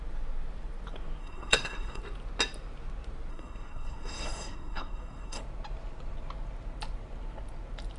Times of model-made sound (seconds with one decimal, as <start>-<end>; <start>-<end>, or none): 1.2-2.0; 3.3-5.4